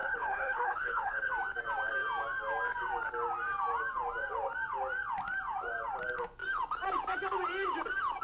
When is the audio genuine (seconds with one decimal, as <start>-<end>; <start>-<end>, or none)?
1.3-8.2